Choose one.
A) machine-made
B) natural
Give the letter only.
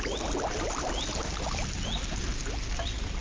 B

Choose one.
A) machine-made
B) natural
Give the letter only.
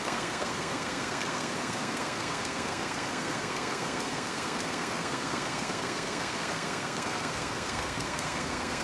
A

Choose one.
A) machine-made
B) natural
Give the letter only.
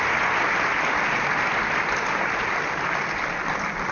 B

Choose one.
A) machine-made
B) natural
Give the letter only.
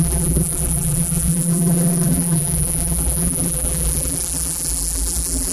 A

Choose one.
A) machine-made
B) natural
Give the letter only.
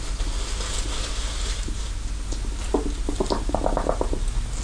B